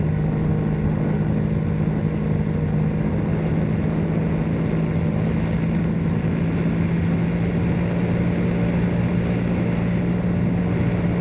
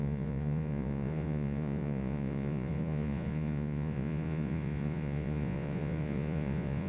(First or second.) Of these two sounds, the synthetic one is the second